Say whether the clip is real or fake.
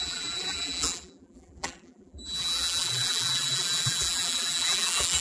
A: fake